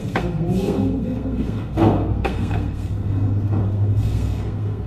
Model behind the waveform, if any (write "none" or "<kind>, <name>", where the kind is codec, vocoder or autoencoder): codec, SNAC